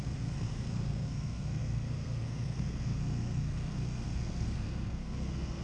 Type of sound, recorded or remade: remade